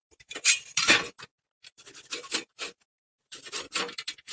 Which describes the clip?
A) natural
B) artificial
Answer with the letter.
B